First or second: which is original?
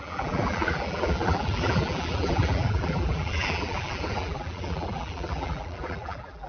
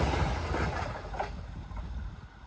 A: second